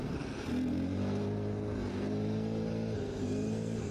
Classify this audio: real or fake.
fake